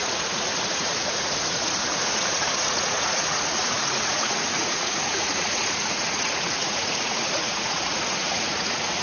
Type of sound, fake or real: fake